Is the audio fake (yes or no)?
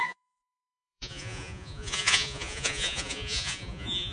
yes